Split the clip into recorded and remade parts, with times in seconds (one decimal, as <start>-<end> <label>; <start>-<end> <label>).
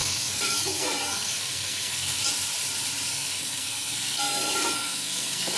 0.0-2.2 remade; 2.2-3.1 recorded; 3.1-5.6 remade